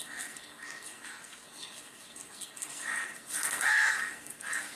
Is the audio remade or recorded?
remade